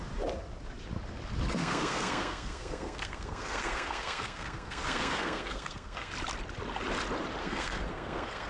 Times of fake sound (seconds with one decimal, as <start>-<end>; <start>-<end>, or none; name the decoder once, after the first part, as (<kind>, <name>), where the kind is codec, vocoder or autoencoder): 1.6-6.1 (codec, SNAC); 7.4-8.5